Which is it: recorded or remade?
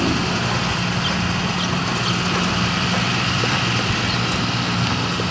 recorded